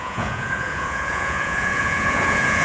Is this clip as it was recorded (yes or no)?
no